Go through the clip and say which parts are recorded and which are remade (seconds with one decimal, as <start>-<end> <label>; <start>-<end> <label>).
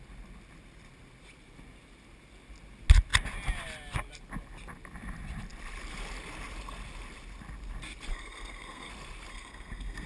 0.0-8.1 recorded; 8.1-8.9 remade; 8.9-9.3 recorded; 9.3-10.1 remade